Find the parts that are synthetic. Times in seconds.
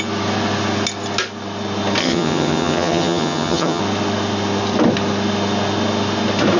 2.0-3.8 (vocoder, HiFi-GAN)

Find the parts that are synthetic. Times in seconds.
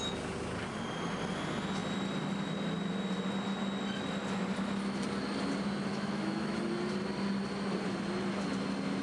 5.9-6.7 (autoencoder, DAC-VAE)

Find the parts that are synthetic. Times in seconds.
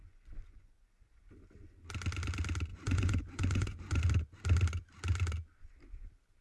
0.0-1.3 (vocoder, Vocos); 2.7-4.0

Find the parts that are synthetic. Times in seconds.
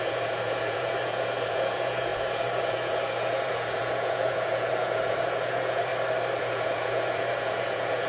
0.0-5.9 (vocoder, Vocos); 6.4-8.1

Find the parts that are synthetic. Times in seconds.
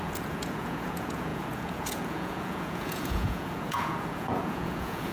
0.0-5.1 (vocoder, Vocos)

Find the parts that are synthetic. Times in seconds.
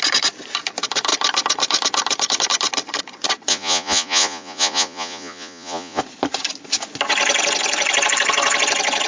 3.5-6.0 (vocoder, Vocos)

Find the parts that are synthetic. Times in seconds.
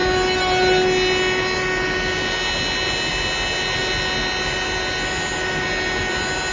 none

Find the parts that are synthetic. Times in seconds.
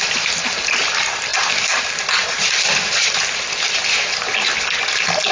none